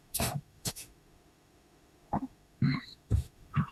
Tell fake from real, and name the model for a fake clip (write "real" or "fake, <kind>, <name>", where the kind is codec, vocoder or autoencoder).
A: fake, autoencoder, DAC-VAE